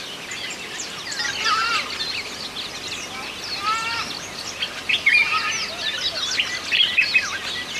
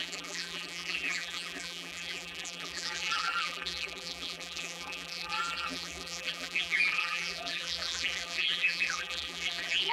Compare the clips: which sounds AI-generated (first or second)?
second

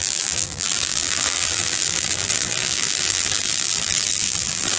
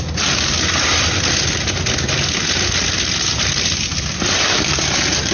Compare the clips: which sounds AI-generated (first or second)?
first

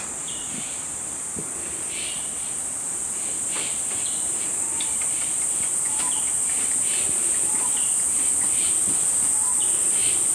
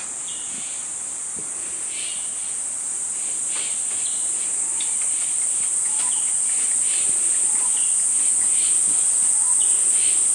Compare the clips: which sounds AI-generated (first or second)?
first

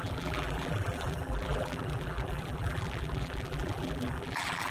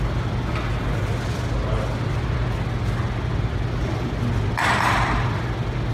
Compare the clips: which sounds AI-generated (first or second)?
first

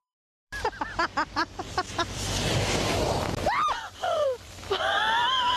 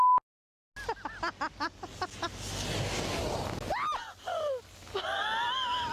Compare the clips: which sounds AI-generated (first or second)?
first